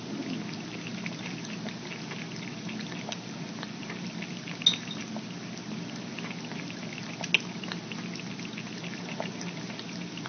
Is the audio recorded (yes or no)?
yes